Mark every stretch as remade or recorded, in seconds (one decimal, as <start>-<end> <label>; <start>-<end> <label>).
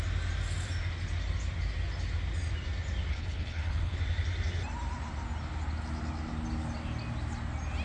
0.0-3.1 recorded; 3.1-4.0 remade; 4.0-7.8 recorded